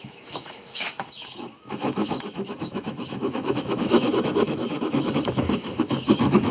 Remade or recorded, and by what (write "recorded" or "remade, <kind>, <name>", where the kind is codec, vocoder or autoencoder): remade, autoencoder, DAC-VAE